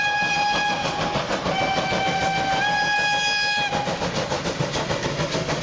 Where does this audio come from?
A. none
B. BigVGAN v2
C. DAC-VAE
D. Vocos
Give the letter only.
A